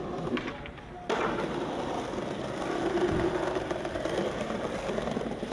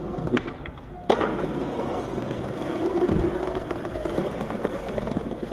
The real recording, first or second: first